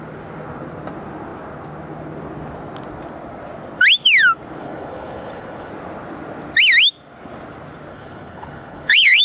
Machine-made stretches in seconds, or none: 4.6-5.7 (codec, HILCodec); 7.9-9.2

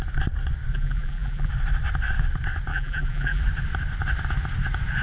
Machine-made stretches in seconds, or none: 0.7-1.5 (vocoder, BigVGAN v2); 2.7-3.4

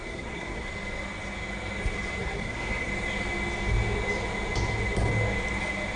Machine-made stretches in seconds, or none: 0.0-0.7 (codec, SNAC); 2.2-2.9

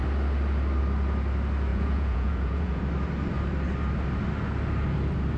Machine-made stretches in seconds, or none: 1.7-2.8 (vocoder, Vocos)

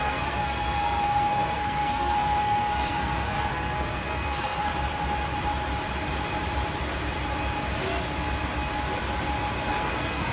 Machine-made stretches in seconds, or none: 0.0-4.7 (codec, SNAC); 9.7-10.3

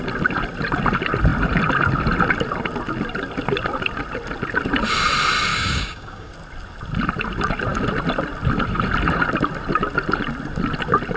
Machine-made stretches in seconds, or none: 5.5-6.3 (codec, DAC)

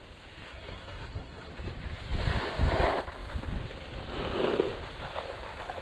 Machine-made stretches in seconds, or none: 0.5-1.5 (codec, SNAC)